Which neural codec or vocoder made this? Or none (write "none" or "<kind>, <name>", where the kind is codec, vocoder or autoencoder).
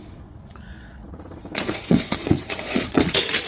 vocoder, Vocos